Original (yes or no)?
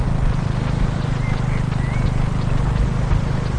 yes